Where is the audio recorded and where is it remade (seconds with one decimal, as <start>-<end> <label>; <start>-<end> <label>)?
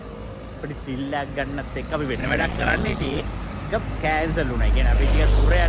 0.0-2.2 recorded; 2.2-3.2 remade; 3.2-5.7 recorded